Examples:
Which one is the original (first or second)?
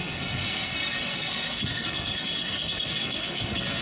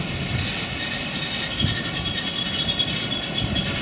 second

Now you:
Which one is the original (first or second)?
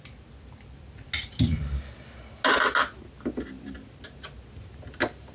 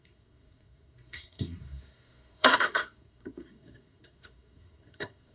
first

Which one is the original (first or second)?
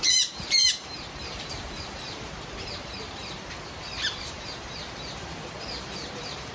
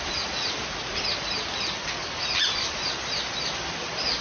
second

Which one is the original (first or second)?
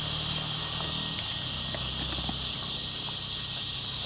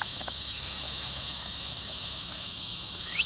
first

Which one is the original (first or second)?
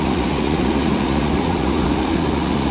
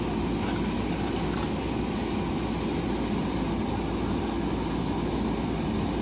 second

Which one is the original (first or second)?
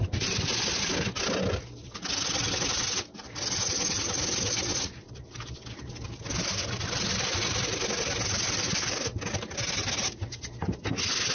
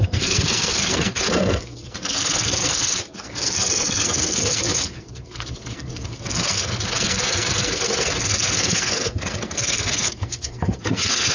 first